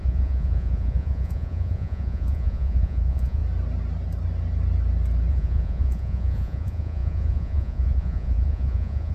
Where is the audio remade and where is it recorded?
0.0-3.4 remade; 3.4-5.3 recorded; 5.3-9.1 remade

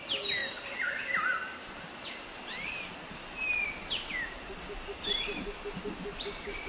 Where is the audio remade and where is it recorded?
0.0-0.4 recorded; 0.4-0.9 remade; 0.9-1.4 recorded; 1.4-5.4 remade; 5.4-6.7 recorded

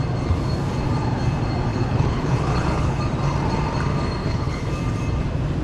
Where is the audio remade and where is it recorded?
0.0-1.7 recorded; 1.7-3.0 remade; 3.0-4.2 recorded; 4.2-4.7 remade; 4.7-5.6 recorded

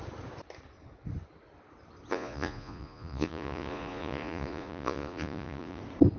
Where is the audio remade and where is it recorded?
0.0-2.1 recorded; 2.1-5.8 remade; 5.8-6.2 recorded

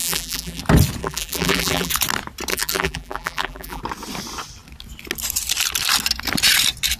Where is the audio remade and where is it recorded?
0.0-0.6 remade; 0.6-1.0 recorded; 1.0-1.9 remade; 1.9-2.5 recorded; 2.5-3.8 remade; 3.8-7.0 recorded

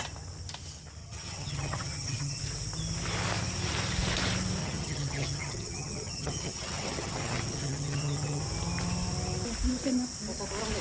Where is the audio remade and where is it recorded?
0.0-1.0 recorded; 1.0-2.4 remade; 2.4-4.6 recorded; 4.6-8.4 remade; 8.4-10.8 recorded